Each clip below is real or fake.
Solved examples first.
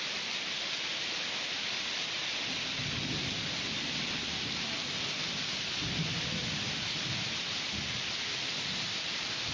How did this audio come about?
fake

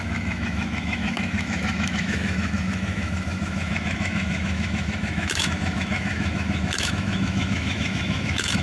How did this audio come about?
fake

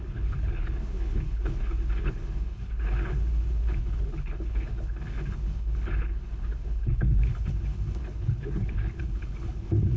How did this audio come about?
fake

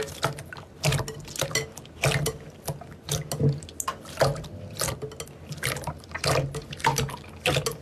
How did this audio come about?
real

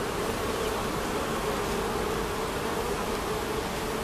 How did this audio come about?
real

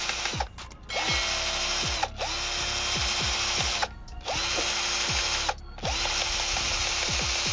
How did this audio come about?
real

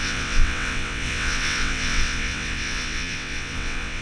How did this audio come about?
fake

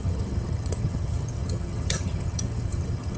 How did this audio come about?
fake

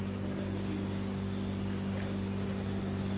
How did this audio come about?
real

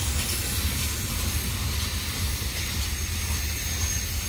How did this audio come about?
real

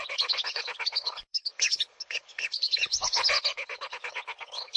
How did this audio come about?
fake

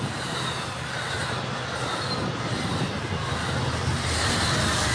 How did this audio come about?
real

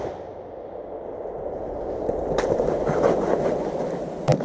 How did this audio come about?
real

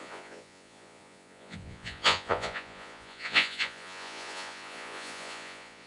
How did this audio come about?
fake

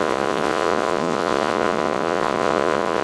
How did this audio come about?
fake